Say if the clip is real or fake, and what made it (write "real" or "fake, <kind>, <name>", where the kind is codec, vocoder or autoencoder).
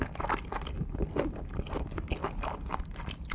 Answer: real